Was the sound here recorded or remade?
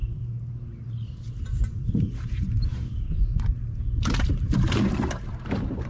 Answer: remade